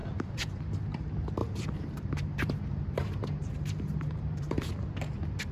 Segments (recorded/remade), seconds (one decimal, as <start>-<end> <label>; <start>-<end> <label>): 0.0-0.6 remade; 0.6-1.4 recorded; 1.4-4.7 remade; 4.7-5.5 recorded